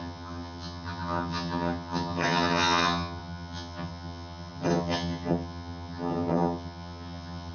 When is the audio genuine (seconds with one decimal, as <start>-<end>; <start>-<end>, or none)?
none